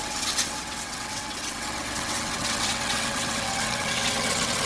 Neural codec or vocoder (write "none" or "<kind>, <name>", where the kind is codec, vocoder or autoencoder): vocoder, WaveNeXt